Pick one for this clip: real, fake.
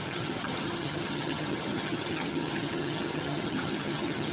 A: fake